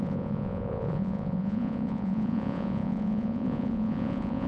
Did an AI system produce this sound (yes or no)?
yes